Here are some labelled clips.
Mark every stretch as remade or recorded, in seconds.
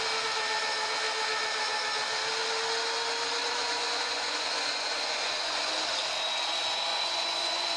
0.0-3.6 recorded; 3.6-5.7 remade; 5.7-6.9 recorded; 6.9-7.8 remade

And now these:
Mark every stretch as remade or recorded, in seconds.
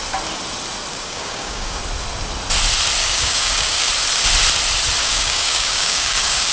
0.0-0.9 recorded; 0.9-1.8 remade; 1.8-3.0 recorded; 3.0-3.9 remade; 3.9-5.0 recorded; 5.0-6.5 remade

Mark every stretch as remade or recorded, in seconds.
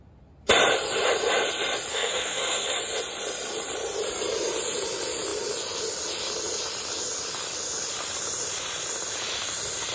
0.0-1.9 recorded; 1.9-2.7 remade; 2.7-9.9 recorded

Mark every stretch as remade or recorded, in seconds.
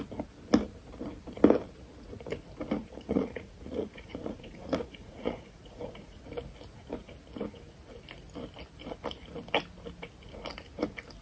0.0-2.8 recorded; 2.8-6.2 remade; 6.2-11.2 recorded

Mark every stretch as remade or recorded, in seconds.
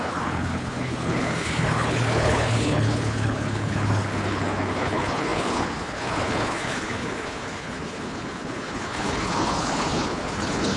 0.0-10.8 remade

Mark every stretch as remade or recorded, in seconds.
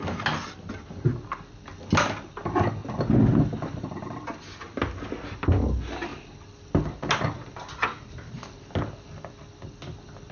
0.0-10.3 recorded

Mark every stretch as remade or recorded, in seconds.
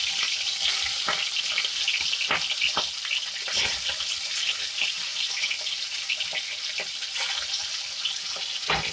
0.0-8.9 recorded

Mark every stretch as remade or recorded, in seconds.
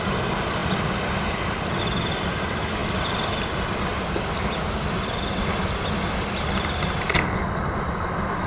0.0-8.5 recorded